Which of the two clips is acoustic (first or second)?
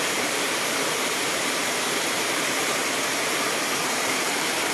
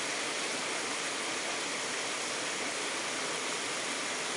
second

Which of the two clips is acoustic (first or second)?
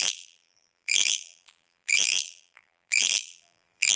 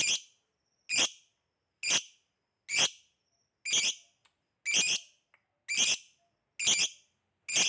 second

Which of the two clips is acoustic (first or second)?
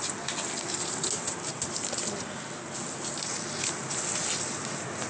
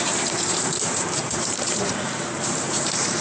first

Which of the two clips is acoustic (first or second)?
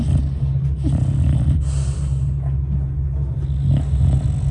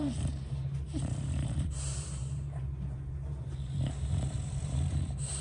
first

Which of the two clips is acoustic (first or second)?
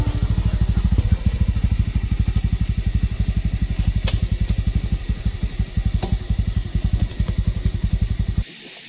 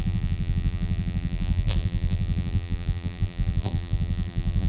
first